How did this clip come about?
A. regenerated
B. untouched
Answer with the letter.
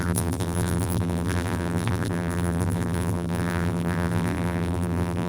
A